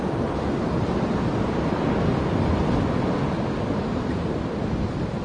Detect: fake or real real